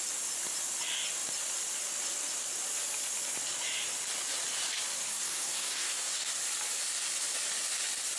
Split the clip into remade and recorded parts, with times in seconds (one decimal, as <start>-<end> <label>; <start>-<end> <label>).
0.0-5.1 recorded; 5.1-6.3 remade; 6.3-8.2 recorded